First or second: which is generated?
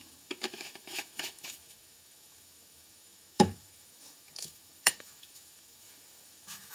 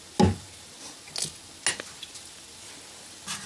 first